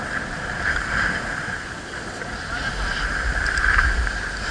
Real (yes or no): yes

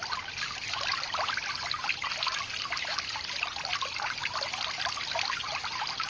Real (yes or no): yes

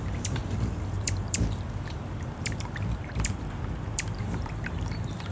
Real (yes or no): no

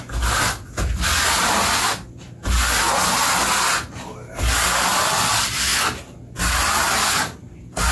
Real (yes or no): yes